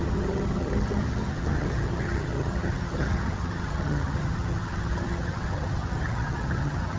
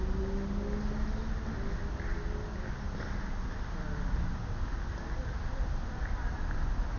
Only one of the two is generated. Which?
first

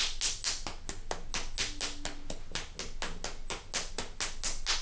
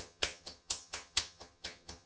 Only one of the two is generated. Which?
second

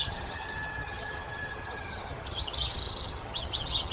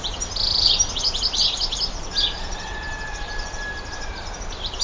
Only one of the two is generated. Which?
first